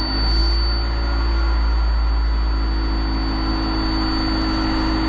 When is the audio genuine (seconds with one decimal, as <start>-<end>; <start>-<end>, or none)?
0.0-5.1